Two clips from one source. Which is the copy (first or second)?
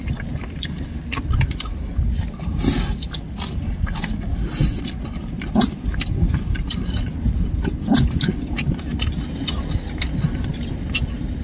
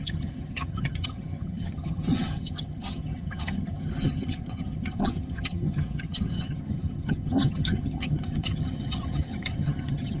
second